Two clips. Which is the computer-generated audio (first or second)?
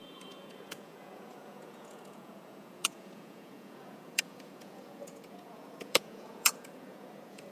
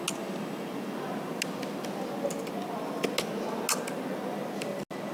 first